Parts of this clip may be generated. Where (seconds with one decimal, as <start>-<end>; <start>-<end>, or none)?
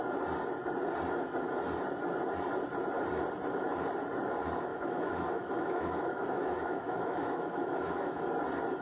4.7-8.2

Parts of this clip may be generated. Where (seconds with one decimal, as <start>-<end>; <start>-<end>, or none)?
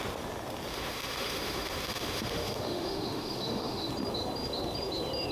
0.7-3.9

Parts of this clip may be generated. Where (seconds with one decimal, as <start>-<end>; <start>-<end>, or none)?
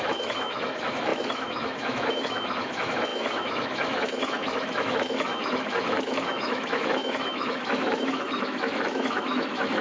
0.0-9.8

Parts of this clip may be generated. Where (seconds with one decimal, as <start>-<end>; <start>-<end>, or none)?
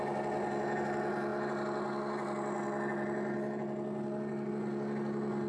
none